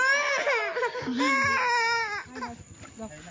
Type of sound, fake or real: real